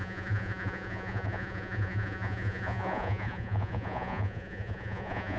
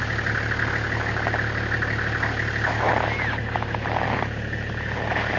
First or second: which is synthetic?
first